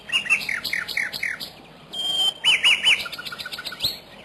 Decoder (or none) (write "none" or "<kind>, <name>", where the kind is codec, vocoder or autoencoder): none